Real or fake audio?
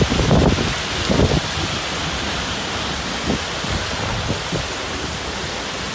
real